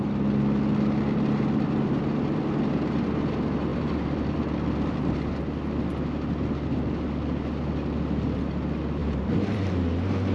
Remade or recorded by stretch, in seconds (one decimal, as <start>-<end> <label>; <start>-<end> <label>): 0.0-3.7 recorded; 3.7-5.4 remade; 5.4-9.0 recorded; 9.0-9.6 remade; 9.6-10.3 recorded